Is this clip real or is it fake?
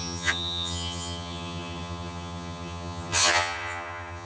fake